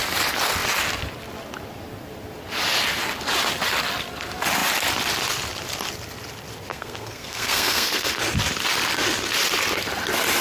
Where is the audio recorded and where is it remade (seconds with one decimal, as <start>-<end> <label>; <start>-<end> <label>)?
0.0-6.7 recorded; 6.7-8.1 remade; 8.1-10.4 recorded